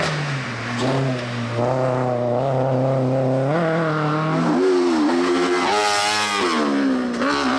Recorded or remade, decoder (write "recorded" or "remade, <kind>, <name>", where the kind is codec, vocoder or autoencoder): recorded